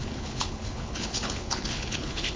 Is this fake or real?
fake